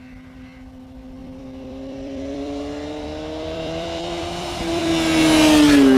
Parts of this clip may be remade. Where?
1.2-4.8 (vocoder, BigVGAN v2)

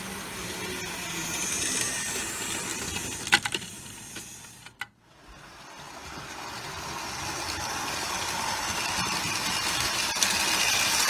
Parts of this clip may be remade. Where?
2.7-5.0 (vocoder, BigVGAN v2); 7.6-10.0

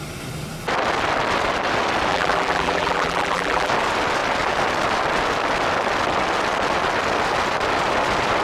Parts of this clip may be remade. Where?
2.1-3.7 (vocoder, BigVGAN v2)

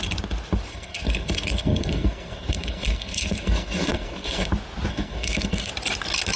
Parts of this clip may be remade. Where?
0.7-4.5 (codec, SNAC); 4.9-5.7

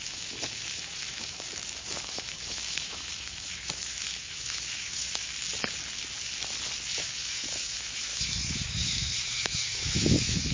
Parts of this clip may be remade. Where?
0.0-5.3 (autoencoder, DAC-VAE); 7.0-10.5